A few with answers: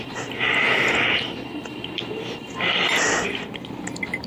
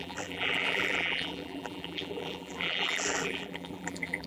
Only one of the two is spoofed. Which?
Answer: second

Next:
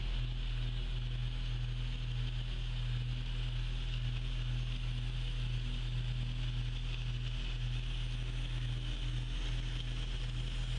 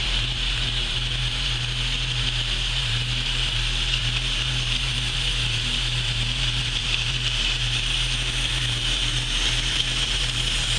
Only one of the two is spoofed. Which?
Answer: second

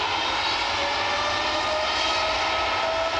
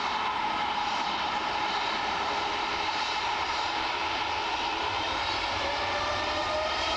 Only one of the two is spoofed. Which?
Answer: second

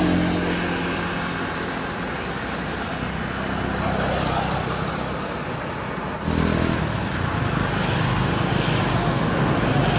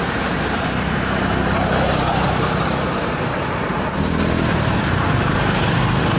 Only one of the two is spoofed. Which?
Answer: second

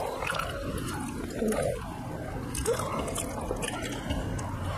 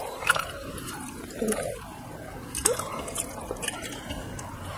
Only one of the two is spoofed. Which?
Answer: second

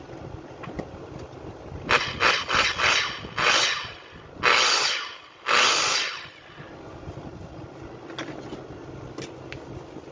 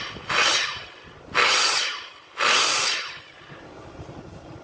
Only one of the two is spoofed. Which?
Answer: second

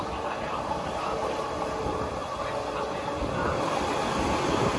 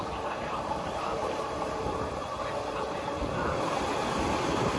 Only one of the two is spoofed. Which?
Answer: second